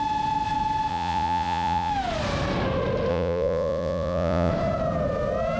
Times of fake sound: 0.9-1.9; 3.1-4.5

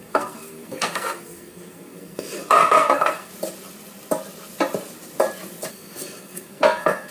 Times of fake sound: 0.0-3.3; 5.7-7.1

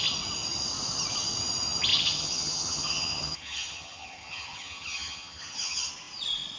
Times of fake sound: 1.9-5.9

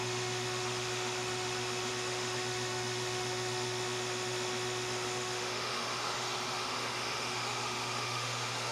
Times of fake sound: 0.0-8.7